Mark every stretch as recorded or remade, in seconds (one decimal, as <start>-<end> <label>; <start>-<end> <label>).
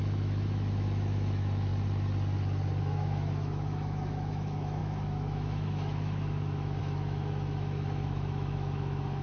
0.0-1.7 remade; 1.7-2.8 recorded; 2.8-9.2 remade